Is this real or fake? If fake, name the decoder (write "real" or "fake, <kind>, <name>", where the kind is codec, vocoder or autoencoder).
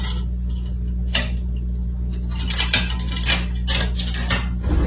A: real